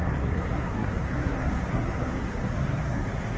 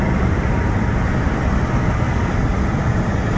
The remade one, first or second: first